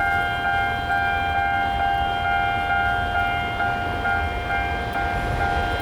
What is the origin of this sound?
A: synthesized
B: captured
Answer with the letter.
B